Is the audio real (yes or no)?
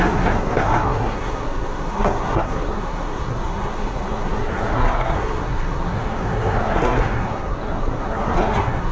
no